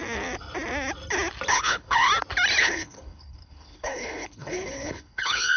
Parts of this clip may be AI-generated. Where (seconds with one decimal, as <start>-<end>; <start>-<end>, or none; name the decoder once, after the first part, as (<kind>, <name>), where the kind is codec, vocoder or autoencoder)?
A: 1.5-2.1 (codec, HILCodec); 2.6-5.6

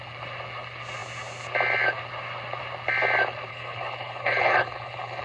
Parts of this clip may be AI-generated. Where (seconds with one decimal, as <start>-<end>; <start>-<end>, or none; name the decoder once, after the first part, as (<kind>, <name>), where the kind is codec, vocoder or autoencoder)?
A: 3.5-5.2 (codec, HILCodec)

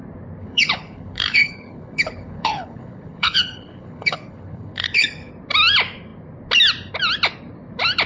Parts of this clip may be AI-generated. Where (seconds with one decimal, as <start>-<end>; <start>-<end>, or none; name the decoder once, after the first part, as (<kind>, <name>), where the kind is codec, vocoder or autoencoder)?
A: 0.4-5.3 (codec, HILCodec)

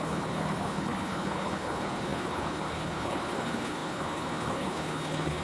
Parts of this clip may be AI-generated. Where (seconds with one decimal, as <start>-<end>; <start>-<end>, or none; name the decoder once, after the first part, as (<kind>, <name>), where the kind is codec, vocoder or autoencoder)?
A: 0.0-5.4 (codec, HILCodec)

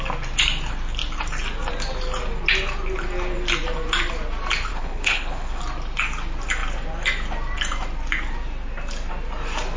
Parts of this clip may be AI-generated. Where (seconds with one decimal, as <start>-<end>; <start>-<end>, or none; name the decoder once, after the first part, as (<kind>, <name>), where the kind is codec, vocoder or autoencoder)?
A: 4.7-5.6 (codec, HILCodec)